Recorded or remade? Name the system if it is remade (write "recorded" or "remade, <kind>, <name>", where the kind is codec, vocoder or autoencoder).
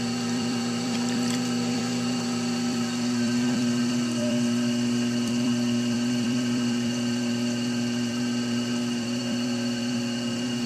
remade, vocoder, BigVGAN v2